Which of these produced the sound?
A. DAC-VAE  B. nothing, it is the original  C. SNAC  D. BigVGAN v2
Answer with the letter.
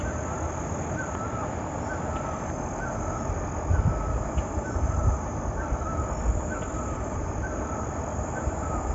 B